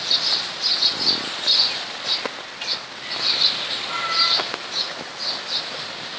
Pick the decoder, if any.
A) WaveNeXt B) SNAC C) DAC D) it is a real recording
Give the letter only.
D